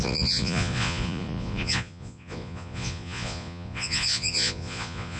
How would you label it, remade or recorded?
remade